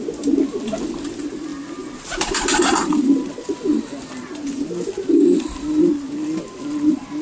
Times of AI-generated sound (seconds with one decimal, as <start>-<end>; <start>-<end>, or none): none